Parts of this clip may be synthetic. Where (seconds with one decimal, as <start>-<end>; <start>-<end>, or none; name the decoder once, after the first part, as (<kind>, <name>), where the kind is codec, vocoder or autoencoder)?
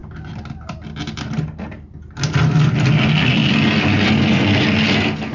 none